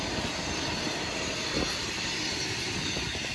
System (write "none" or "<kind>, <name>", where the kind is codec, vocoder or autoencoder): none